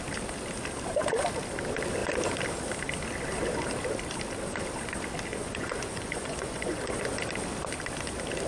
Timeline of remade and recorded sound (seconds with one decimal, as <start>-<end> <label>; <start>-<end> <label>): 0.0-5.3 recorded; 5.3-7.1 remade; 7.1-8.5 recorded